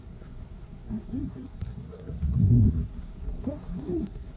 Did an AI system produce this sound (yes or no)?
yes